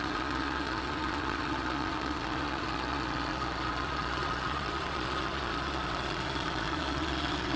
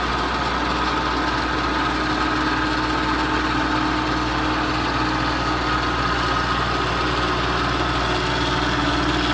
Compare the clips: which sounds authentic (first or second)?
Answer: second